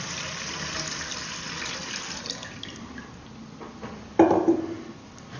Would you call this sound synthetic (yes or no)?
no